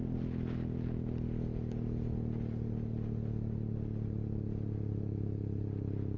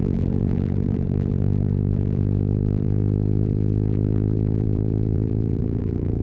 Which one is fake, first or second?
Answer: second